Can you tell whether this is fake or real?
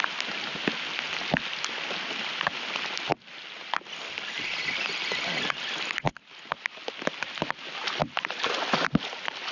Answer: real